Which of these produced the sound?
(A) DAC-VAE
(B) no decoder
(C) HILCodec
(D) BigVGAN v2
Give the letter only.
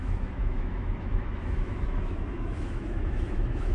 A